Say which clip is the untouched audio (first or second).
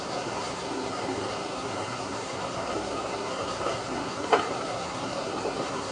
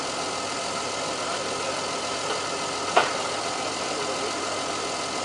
second